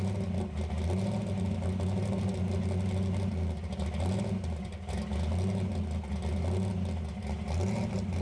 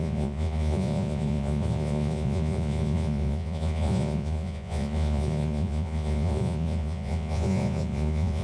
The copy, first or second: second